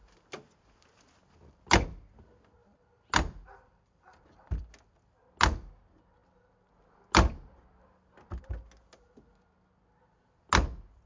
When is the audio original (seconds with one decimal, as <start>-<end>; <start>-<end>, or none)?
0.0-2.6; 4.7-11.1